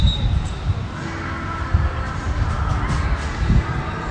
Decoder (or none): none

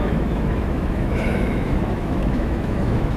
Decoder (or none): autoencoder, DAC-VAE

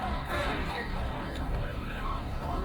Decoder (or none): codec, DAC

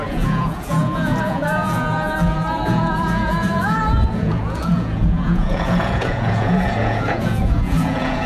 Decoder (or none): vocoder, Vocos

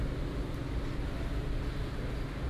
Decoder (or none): none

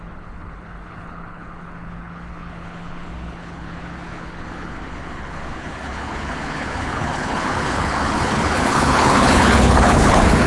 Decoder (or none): codec, HILCodec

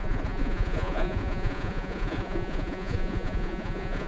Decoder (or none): vocoder, Vocos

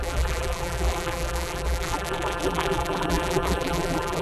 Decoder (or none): vocoder, BigVGAN v2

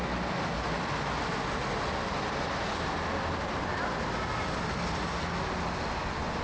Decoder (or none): none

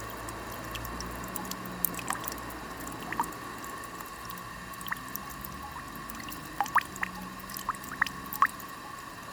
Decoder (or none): none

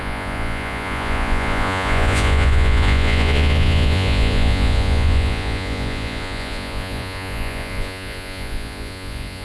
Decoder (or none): vocoder, Vocos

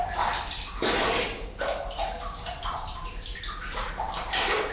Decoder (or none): none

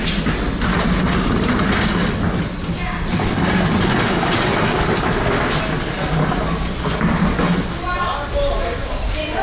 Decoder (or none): none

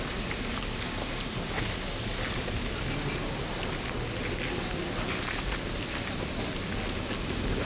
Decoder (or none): none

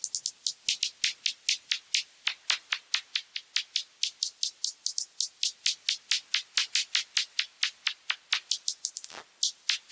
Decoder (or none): none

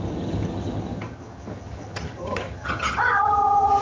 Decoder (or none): vocoder, HiFi-GAN